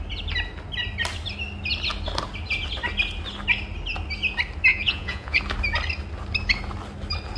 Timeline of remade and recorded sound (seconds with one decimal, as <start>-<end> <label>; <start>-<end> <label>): 0.0-4.7 recorded; 4.7-5.4 remade; 5.4-7.4 recorded